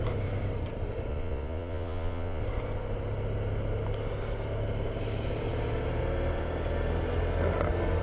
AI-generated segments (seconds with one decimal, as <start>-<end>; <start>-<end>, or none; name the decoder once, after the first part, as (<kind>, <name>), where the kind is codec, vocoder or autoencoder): 1.1-2.4 (vocoder, Vocos)